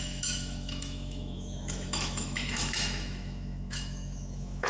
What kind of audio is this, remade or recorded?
remade